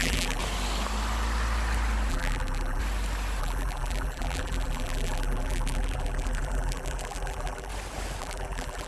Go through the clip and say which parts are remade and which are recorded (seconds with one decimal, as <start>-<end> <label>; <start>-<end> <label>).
0.0-0.4 remade; 0.4-2.1 recorded; 2.1-2.8 remade; 2.8-3.4 recorded; 3.4-7.7 remade; 7.7-8.2 recorded; 8.2-8.9 remade